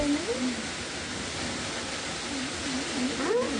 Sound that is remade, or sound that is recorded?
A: recorded